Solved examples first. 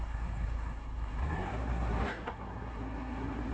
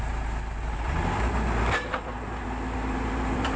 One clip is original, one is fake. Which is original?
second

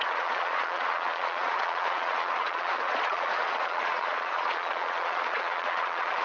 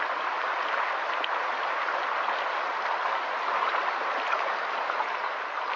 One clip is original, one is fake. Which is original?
second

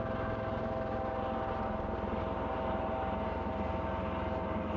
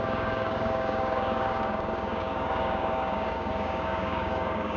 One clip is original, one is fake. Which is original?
first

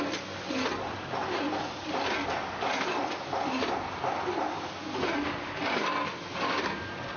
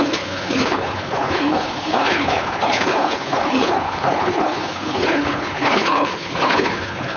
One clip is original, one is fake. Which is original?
first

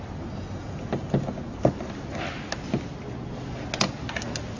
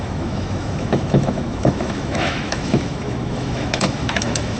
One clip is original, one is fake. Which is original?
first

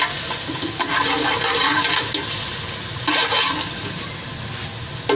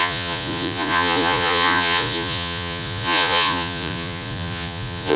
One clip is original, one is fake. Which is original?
first